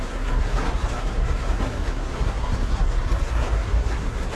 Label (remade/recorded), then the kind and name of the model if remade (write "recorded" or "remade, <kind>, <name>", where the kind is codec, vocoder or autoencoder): remade, codec, SNAC